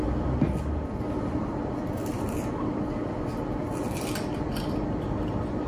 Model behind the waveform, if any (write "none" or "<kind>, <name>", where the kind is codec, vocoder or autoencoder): none